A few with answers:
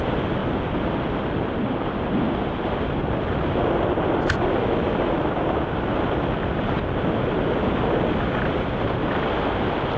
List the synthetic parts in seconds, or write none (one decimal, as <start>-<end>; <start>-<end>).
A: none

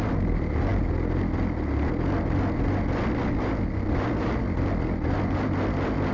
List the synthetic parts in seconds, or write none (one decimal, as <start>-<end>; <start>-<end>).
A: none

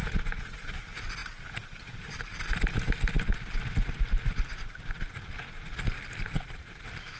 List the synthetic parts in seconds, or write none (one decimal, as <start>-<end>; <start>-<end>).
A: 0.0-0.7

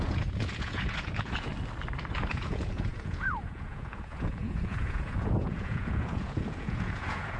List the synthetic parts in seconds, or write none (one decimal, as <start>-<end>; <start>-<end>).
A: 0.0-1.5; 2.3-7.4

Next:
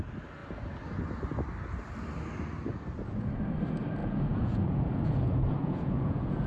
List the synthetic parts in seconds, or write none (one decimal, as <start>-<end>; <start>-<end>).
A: 4.0-6.5

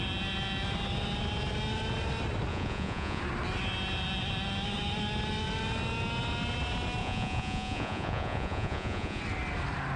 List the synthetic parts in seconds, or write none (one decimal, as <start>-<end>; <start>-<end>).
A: 2.5-3.2; 7.0-9.2

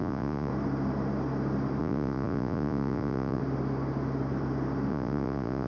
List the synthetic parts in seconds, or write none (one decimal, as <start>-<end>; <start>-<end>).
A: 0.0-0.5; 1.8-3.4; 4.9-5.7

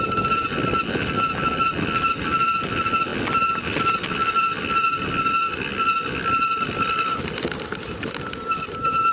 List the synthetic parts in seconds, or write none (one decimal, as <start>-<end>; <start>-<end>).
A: none